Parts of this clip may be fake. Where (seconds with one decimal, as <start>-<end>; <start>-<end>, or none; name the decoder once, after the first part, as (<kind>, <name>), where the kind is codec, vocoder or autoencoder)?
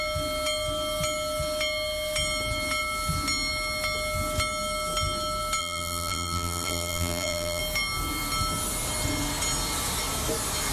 5.6-7.6 (vocoder, BigVGAN v2)